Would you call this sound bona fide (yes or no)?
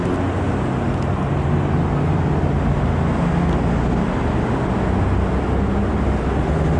yes